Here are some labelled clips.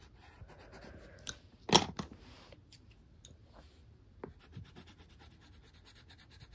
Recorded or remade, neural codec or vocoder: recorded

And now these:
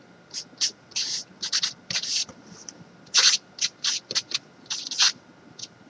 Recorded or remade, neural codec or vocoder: remade, vocoder, BigVGAN v2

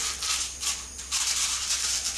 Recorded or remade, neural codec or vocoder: recorded